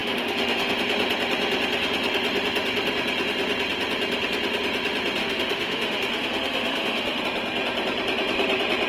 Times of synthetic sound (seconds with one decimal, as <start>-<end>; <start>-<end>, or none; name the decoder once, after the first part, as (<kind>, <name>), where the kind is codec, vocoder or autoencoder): 0.0-0.7 (autoencoder, DAC-VAE); 5.2-7.2